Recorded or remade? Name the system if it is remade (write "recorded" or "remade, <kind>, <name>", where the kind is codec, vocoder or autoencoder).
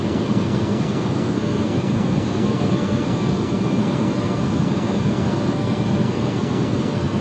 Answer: remade, codec, SNAC